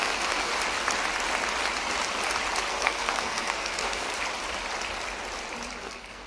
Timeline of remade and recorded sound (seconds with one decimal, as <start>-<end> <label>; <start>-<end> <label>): 0.0-0.5 remade; 0.5-2.7 recorded; 2.7-4.1 remade; 4.1-5.8 recorded; 5.8-6.3 remade